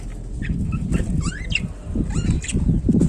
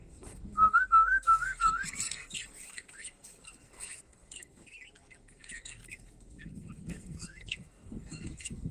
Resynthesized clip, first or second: second